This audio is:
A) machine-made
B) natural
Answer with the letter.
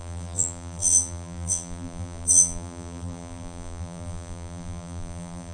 A